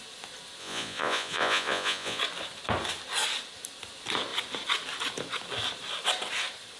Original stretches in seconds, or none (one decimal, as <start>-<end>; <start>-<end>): 0.0-0.6; 2.2-6.8

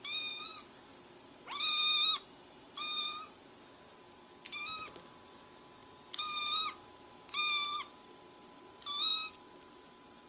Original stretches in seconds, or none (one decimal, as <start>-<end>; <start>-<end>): 0.0-10.3